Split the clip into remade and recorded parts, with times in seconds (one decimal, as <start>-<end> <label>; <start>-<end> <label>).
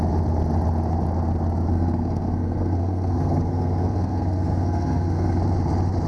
0.0-1.7 recorded; 1.7-5.4 remade; 5.4-6.1 recorded